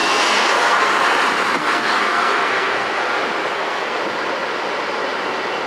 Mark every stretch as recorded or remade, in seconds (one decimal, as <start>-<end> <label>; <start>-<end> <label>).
0.0-0.9 remade; 0.9-1.6 recorded; 1.6-3.1 remade; 3.1-3.5 recorded; 3.5-4.0 remade; 4.0-5.7 recorded